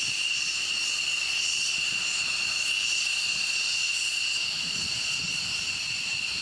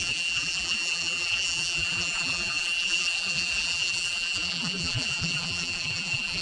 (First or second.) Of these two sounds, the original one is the first